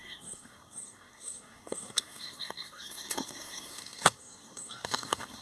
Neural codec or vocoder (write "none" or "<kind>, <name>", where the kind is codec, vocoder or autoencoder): codec, SNAC